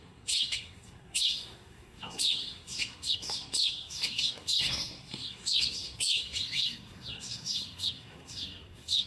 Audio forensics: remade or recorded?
remade